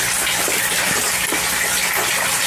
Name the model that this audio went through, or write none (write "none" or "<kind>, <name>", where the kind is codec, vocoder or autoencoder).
none